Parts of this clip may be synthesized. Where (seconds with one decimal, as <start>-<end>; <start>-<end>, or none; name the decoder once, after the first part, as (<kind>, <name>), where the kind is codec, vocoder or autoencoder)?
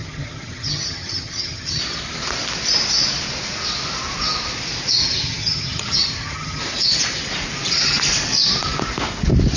0.0-1.8 (vocoder, HiFi-GAN); 5.0-6.6